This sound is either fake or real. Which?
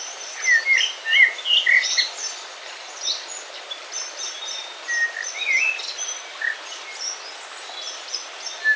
real